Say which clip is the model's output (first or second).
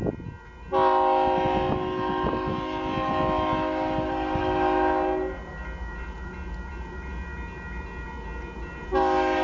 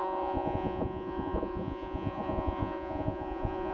second